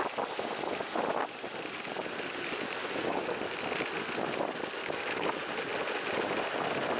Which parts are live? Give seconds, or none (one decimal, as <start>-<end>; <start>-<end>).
0.0-2.8; 3.4-4.8; 5.3-7.0